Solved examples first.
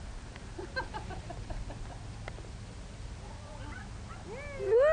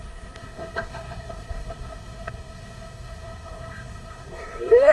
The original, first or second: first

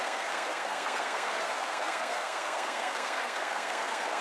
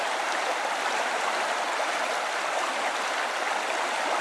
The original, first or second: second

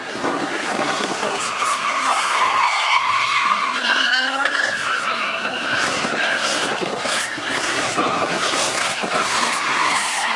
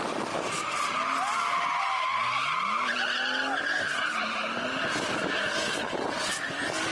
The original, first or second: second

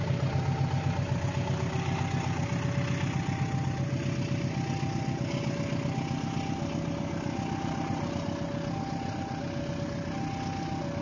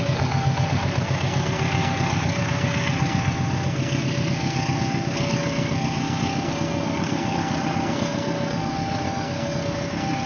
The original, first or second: first